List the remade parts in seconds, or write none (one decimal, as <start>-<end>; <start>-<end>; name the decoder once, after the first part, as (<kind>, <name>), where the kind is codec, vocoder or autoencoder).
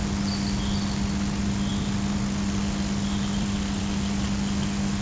none